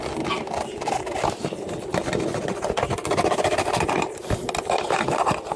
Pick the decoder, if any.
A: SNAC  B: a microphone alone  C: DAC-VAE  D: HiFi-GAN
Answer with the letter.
B